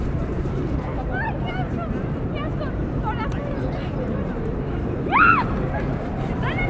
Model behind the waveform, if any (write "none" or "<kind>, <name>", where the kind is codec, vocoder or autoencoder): vocoder, BigVGAN v2